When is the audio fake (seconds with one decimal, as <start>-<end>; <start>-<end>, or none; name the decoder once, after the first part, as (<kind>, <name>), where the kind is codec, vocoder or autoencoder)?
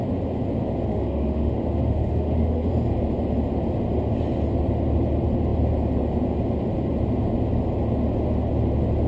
0.9-2.7 (autoencoder, DAC-VAE)